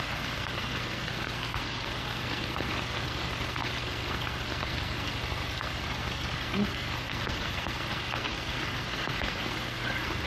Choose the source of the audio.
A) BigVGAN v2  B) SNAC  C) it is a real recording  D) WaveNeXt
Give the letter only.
B